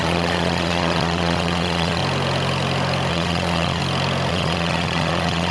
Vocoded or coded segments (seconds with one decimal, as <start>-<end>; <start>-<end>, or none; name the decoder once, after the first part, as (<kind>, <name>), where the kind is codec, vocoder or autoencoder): 0.0-2.0 (vocoder, Vocos); 3.1-3.8; 4.3-5.5